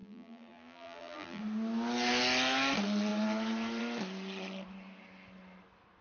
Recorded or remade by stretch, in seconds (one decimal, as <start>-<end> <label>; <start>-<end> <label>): 0.0-1.4 remade; 1.4-6.0 recorded